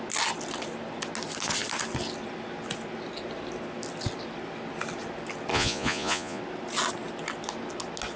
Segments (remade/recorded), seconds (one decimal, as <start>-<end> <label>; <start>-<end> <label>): 0.0-5.5 recorded; 5.5-6.4 remade; 6.4-8.2 recorded